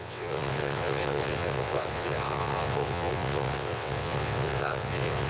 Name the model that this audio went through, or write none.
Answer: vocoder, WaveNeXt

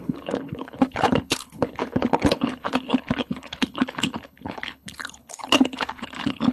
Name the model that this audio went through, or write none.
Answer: codec, HILCodec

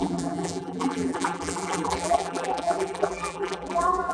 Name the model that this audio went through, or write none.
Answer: vocoder, BigVGAN v2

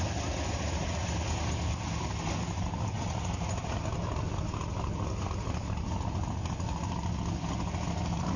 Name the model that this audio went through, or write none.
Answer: none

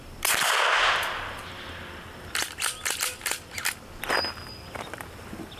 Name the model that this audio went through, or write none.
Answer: none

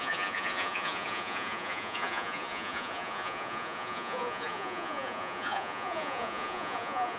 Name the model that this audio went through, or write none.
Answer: vocoder, Vocos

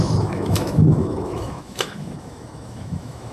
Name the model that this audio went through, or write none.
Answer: autoencoder, DAC-VAE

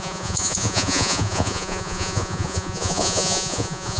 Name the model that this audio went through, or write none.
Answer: vocoder, Vocos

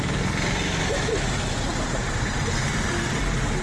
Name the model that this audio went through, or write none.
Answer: none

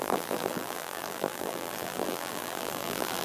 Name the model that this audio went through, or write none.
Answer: vocoder, BigVGAN v2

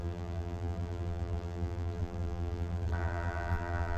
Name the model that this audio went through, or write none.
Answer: vocoder, BigVGAN v2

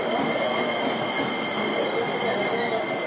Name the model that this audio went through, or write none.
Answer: none